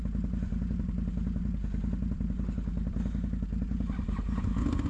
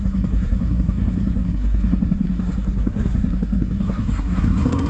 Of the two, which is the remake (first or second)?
second